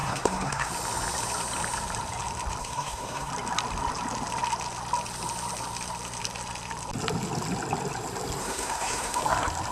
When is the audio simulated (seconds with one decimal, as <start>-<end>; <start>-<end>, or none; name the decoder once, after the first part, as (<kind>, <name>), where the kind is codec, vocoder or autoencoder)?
0.0-0.7 (codec, SNAC); 2.6-3.3; 8.4-9.2